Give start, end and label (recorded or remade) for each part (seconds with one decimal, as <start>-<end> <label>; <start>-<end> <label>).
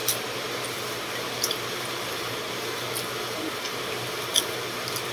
0.0-5.1 recorded